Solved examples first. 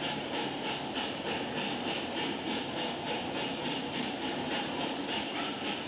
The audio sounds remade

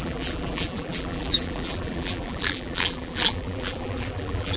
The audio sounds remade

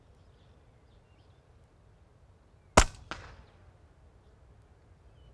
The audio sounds recorded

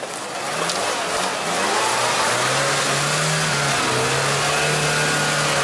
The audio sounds recorded